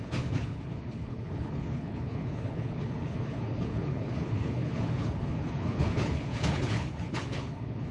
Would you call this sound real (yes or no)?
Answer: no